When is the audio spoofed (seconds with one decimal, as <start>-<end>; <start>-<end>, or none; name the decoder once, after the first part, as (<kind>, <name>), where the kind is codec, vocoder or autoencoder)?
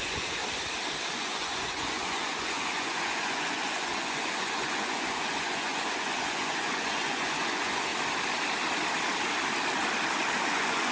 0.0-0.4 (vocoder, Vocos); 1.1-7.9; 10.5-10.9